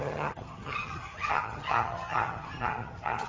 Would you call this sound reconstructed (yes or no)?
yes